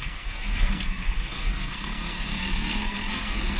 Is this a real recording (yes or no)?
no